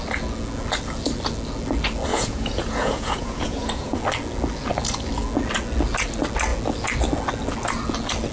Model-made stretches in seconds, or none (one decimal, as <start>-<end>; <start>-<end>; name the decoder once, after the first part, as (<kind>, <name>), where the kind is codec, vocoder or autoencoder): 2.1-4.0 (vocoder, Vocos)